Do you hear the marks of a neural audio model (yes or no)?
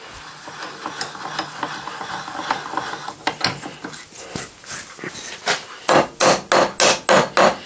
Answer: no